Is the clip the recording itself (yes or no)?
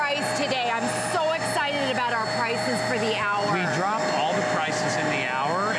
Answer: yes